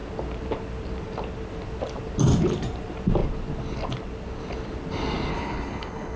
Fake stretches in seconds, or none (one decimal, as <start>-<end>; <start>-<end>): 5.3-6.2